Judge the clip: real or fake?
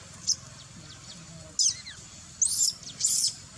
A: real